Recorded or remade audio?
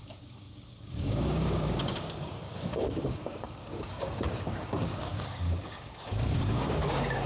remade